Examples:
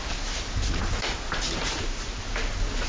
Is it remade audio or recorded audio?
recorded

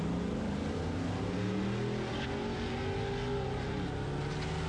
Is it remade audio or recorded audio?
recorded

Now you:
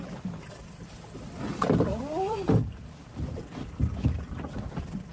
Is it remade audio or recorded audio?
remade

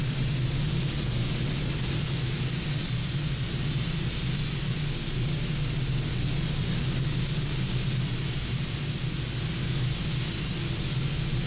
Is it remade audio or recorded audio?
recorded